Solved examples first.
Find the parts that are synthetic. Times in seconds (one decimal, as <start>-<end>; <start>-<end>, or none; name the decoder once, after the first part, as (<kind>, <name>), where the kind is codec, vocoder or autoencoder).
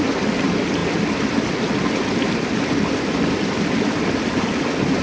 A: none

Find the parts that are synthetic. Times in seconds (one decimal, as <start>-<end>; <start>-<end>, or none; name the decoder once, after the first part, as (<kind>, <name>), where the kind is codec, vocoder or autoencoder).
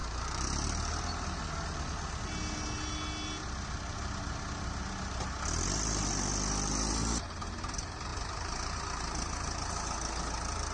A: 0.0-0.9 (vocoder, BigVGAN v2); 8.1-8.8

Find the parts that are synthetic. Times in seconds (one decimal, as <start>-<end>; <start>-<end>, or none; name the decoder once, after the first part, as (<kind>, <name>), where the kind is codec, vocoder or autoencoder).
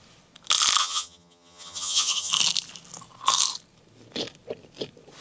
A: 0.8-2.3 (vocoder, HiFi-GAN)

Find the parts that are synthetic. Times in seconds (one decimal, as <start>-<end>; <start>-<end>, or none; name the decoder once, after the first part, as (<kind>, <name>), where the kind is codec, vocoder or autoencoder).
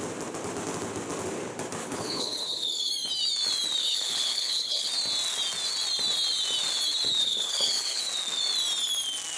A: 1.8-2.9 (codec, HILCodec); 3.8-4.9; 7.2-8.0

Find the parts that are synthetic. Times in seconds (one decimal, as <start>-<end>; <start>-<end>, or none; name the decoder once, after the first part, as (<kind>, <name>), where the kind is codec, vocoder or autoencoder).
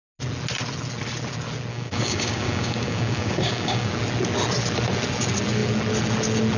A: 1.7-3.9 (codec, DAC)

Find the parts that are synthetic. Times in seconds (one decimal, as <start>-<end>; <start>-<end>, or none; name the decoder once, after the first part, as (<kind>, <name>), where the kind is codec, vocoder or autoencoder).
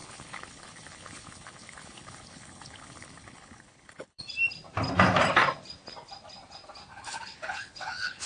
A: 0.0-4.2 (codec, HILCodec); 6.9-8.3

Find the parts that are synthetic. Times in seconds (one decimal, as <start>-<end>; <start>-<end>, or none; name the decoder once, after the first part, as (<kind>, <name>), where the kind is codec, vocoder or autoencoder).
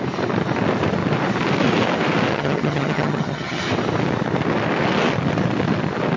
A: 2.3-3.6 (vocoder, HiFi-GAN)